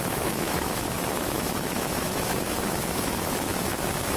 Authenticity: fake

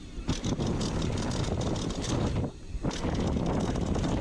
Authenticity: real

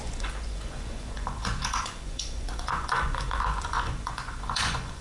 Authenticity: fake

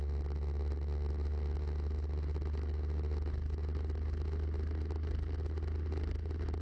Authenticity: real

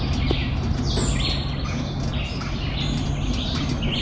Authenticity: real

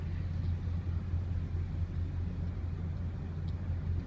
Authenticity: real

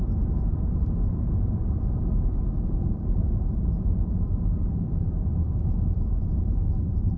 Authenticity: fake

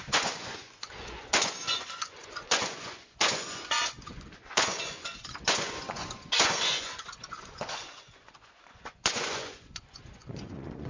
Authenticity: fake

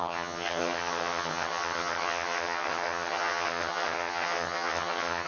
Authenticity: fake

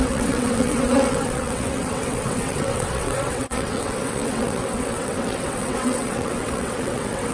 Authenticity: fake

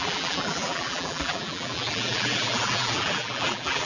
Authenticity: fake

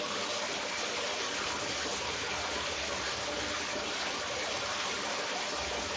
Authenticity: real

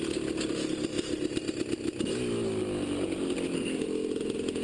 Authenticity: real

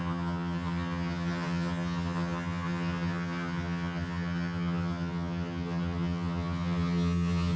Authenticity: fake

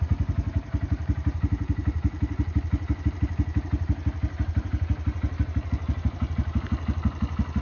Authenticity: real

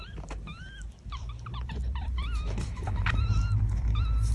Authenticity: fake